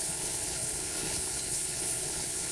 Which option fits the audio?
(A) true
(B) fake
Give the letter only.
B